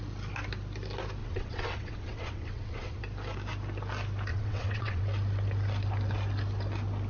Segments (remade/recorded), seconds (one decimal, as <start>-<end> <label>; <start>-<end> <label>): 0.0-1.2 recorded; 1.2-3.0 remade; 3.0-4.3 recorded; 4.3-5.0 remade; 5.0-7.1 recorded